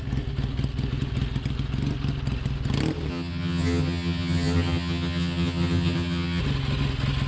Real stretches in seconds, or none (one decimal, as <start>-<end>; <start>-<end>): 0.0-3.1; 6.4-7.3